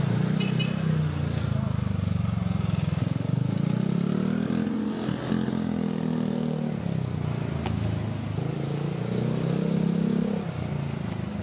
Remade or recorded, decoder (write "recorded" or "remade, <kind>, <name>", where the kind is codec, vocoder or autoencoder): recorded